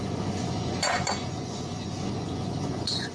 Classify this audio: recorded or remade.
remade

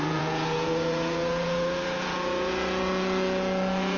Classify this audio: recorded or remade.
remade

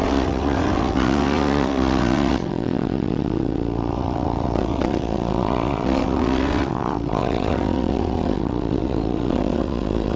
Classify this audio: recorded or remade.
remade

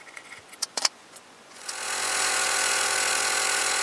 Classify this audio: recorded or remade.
remade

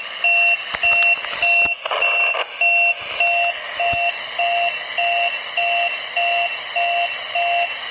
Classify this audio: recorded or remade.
recorded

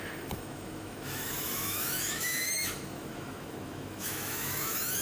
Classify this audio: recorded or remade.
remade